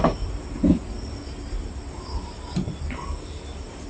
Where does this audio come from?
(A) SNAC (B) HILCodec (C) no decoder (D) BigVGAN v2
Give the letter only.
C